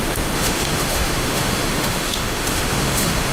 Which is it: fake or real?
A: fake